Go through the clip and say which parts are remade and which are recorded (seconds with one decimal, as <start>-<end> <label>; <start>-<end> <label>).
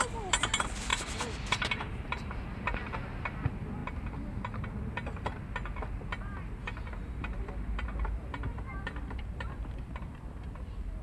0.0-0.9 recorded; 0.9-2.4 remade; 2.4-6.1 recorded; 6.1-11.0 remade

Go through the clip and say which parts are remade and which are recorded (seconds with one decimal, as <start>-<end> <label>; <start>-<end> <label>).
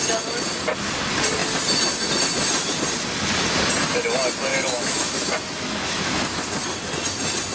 0.0-4.5 recorded; 4.5-6.2 remade; 6.2-7.5 recorded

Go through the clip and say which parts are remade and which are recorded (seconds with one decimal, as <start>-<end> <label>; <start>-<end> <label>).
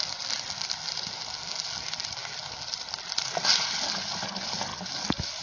0.0-5.4 recorded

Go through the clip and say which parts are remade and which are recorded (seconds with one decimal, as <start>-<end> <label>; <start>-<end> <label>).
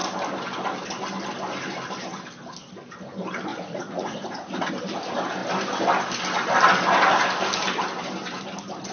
0.0-3.5 recorded; 3.5-4.7 remade; 4.7-8.9 recorded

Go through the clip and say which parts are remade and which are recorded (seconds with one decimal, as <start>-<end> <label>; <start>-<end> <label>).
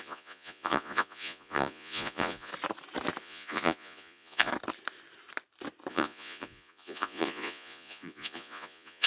0.0-2.5 remade; 2.5-3.2 recorded; 3.2-4.5 remade; 4.5-5.9 recorded; 5.9-9.1 remade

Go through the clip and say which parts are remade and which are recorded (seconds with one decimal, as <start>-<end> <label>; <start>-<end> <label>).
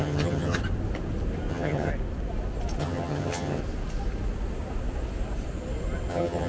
0.0-0.6 remade; 0.6-1.5 recorded; 1.5-1.9 remade; 1.9-2.8 recorded; 2.8-3.6 remade; 3.6-6.1 recorded; 6.1-6.5 remade